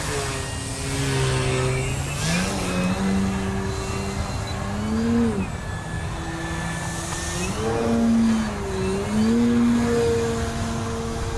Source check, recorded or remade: recorded